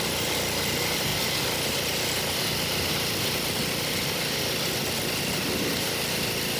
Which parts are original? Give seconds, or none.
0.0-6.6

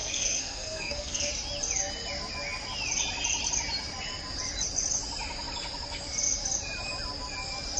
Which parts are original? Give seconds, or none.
1.3-7.8

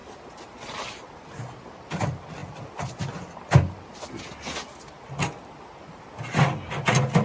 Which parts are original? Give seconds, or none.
0.0-7.2